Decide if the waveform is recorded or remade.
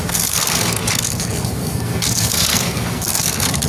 remade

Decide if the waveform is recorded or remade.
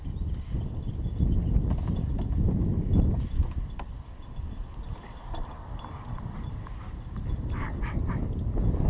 recorded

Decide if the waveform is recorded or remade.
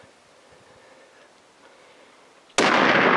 recorded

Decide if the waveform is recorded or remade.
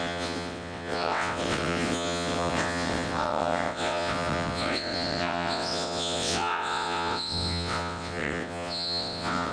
remade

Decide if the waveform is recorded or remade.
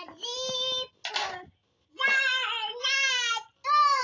recorded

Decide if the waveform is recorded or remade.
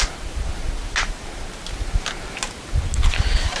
recorded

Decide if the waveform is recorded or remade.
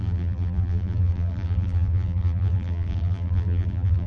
remade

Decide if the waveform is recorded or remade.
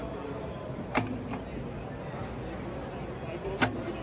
recorded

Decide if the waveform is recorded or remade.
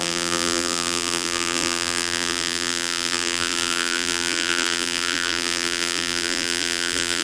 remade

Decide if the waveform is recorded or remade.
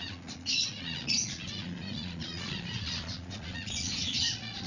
remade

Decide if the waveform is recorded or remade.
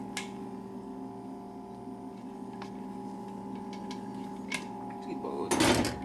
recorded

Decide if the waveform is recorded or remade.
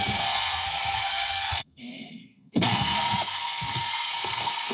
remade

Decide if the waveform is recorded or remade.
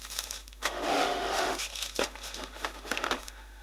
remade